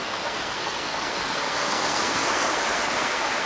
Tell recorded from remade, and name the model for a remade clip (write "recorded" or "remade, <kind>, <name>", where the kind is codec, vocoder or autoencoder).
remade, codec, SNAC